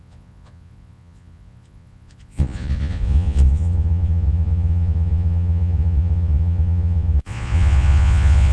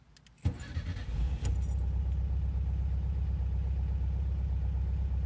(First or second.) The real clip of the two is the second